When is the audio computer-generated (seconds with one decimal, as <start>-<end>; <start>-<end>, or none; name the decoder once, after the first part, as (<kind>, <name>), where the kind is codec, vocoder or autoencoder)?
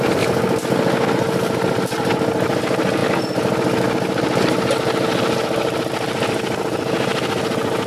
none